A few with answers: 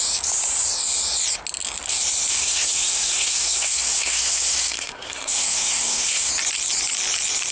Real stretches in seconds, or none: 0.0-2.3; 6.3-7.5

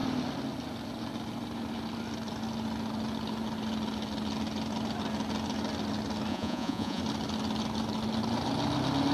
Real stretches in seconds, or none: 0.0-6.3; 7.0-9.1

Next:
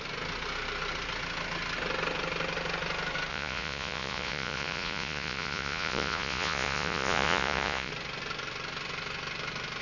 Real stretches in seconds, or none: 0.0-3.3; 7.9-9.8